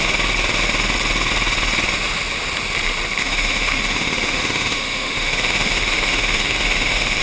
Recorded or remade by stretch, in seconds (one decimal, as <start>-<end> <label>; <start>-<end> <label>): 0.0-3.2 recorded; 3.2-7.2 remade